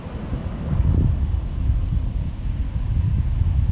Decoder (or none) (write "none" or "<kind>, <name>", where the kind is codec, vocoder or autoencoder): none